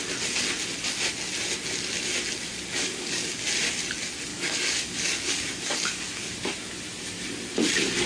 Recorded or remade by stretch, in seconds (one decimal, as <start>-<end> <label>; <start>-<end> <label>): 0.0-2.7 recorded; 2.7-3.3 remade; 3.3-4.3 recorded; 4.3-6.3 remade; 6.3-8.1 recorded